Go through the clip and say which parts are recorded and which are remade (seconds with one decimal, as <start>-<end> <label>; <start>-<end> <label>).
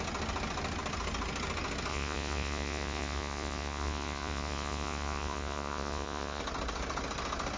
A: 0.0-1.9 recorded; 1.9-6.4 remade; 6.4-7.6 recorded